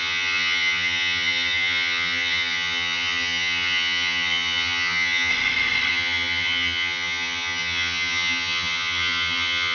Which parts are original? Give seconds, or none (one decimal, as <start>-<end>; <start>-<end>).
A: 5.3-5.9